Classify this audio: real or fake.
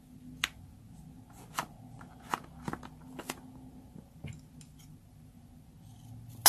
real